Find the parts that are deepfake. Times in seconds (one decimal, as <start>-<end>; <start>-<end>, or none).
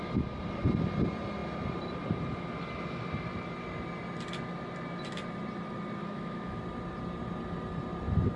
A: 6.0-6.6